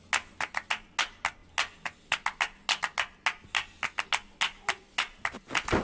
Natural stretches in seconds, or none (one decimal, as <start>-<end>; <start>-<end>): 0.0-5.8